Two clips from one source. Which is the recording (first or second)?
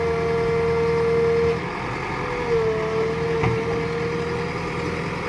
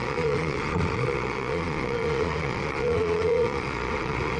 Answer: first